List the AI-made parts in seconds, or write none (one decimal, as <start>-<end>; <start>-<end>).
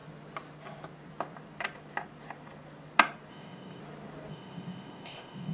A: 3.3-3.8; 4.3-5.5